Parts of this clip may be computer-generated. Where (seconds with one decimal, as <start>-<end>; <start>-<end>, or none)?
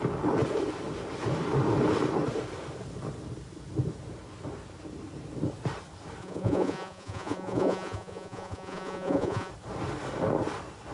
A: 6.2-9.5